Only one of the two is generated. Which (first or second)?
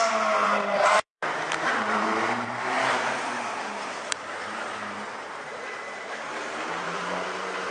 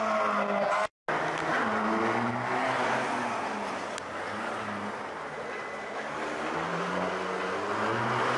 first